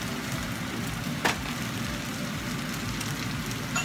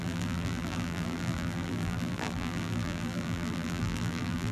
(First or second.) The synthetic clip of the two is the second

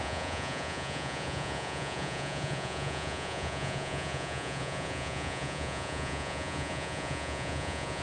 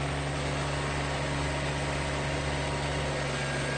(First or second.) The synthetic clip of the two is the first